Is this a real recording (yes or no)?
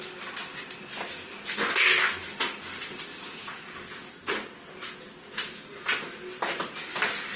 yes